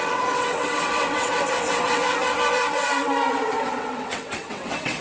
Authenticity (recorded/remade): remade